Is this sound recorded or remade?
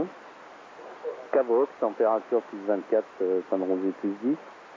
recorded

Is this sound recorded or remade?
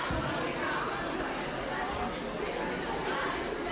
recorded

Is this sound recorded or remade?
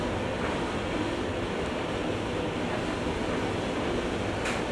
recorded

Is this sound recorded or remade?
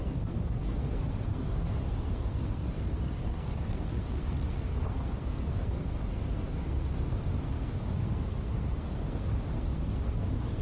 remade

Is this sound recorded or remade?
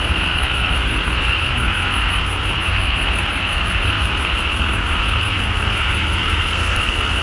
remade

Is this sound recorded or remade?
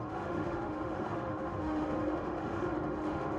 remade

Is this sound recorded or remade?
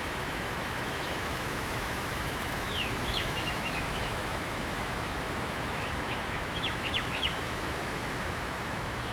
remade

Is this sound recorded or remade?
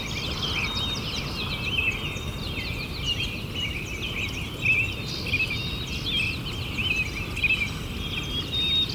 recorded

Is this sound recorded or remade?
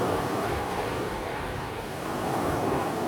remade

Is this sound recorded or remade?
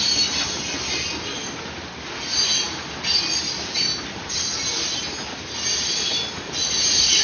recorded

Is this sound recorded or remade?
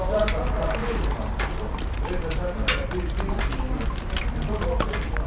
recorded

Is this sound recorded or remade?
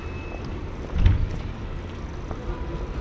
recorded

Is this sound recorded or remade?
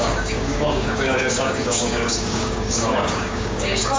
remade